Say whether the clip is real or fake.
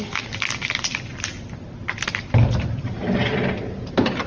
real